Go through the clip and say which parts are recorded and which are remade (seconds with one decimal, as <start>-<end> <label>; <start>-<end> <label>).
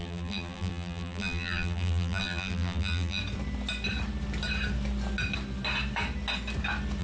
0.0-3.2 remade; 3.2-7.0 recorded